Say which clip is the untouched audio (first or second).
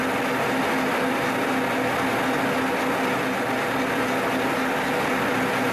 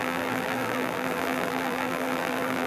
first